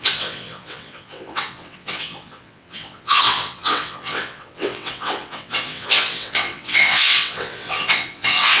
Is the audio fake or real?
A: fake